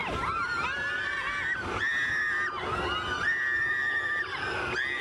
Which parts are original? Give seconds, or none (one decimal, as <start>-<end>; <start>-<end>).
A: 1.4-5.0